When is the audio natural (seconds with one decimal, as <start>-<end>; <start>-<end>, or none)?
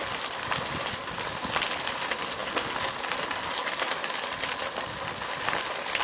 2.4-4.4